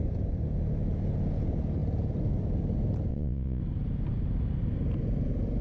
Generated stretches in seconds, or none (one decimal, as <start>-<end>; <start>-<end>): 3.1-3.6